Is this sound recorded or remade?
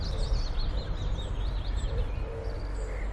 recorded